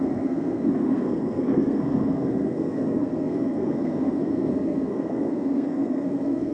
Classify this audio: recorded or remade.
remade